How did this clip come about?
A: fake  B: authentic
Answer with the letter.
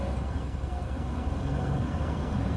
A